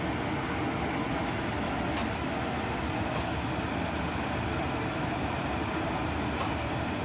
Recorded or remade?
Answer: recorded